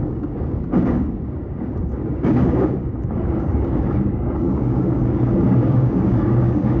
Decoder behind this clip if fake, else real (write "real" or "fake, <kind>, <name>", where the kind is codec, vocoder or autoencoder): fake, codec, DAC